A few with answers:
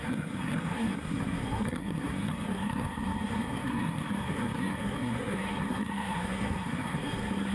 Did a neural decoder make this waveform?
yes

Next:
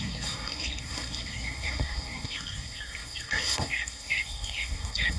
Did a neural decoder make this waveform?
yes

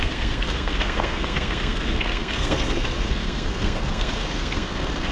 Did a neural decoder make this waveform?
yes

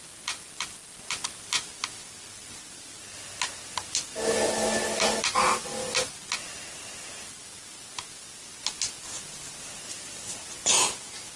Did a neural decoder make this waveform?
no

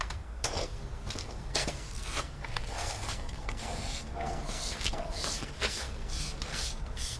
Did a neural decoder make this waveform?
yes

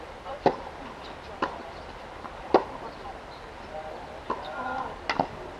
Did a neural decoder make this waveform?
no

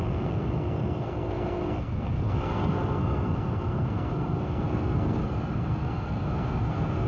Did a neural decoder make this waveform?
yes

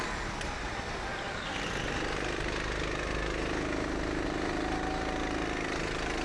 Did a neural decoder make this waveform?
no